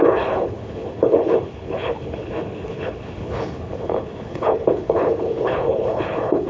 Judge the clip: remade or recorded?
remade